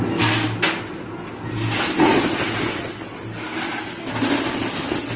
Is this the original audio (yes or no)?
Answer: yes